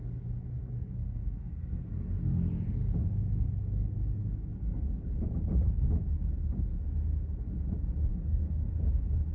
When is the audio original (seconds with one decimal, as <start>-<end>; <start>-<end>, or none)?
0.0-0.5; 1.8-3.0; 5.1-8.1; 8.7-9.3